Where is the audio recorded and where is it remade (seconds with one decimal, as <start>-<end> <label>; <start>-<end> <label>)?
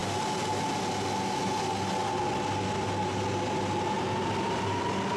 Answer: 0.0-0.7 remade; 0.7-5.2 recorded